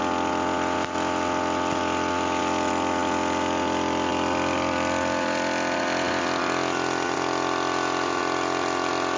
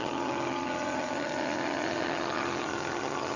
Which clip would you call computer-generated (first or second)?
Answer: second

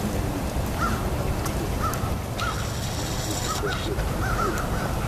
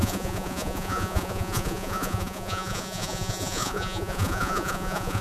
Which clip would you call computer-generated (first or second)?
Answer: second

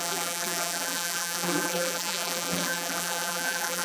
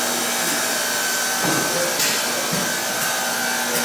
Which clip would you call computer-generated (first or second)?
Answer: first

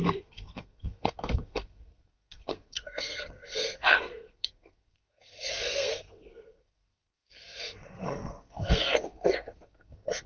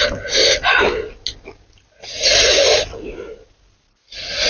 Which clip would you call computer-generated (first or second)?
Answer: first